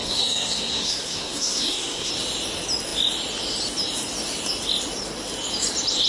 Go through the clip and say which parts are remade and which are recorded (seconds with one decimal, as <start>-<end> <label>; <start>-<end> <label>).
0.0-2.1 remade; 2.1-6.1 recorded